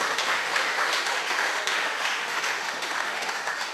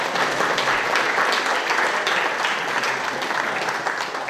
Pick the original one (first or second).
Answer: second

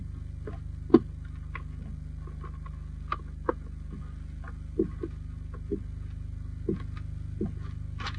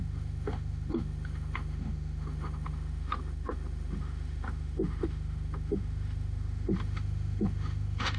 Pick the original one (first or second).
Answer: first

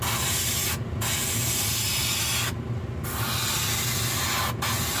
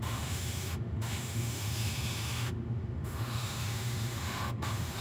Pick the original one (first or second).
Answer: first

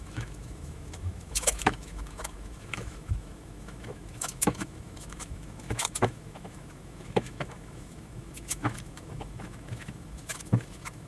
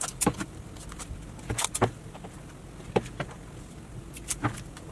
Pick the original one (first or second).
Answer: second